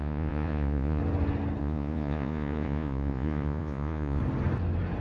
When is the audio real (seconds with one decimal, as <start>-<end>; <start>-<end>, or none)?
1.0-1.6; 4.2-5.0